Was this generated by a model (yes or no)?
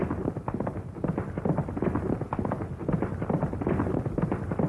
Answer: no